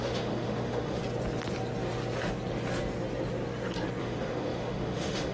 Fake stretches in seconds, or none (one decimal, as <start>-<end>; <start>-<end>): 0.0-1.0; 4.0-5.3